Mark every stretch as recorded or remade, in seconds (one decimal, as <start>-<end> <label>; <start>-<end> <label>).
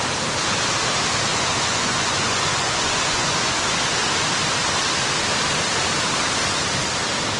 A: 0.0-1.3 recorded; 1.3-3.8 remade; 3.8-7.4 recorded